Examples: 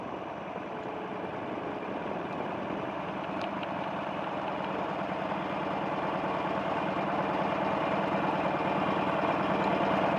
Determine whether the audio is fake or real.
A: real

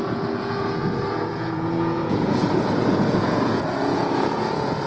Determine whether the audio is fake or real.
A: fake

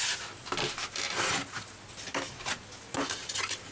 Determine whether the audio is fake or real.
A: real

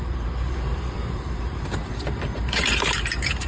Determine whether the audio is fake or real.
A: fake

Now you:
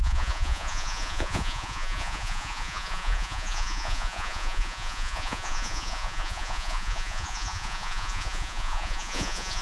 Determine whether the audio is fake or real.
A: fake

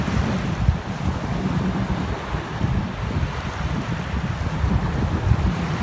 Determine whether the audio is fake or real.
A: real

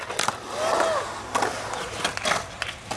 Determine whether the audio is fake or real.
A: real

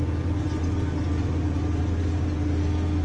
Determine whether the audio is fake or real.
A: real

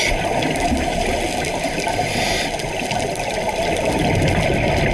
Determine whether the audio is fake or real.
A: real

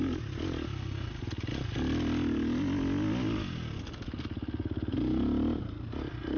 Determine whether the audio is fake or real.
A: real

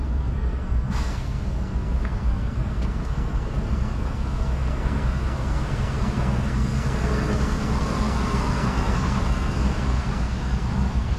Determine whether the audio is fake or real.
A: fake